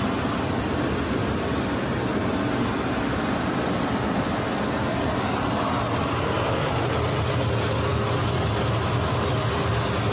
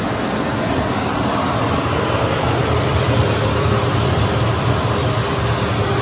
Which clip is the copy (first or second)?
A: second